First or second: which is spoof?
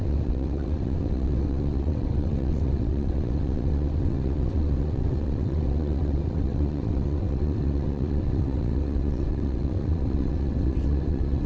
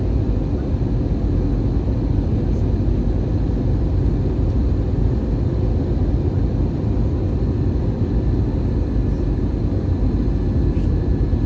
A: first